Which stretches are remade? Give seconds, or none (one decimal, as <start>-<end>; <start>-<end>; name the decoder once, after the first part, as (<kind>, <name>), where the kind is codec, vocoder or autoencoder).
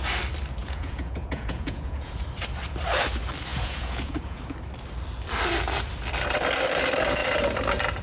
0.6-2.2 (vocoder, Vocos); 3.5-4.4